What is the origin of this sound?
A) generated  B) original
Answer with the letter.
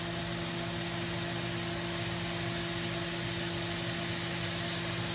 B